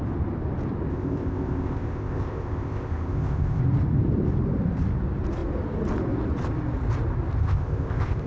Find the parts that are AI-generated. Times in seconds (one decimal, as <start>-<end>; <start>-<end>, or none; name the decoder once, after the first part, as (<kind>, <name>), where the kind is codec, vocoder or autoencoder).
0.9-3.6 (codec, ZipCodec); 7.4-8.3